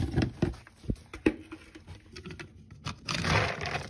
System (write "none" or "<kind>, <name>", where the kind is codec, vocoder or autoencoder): none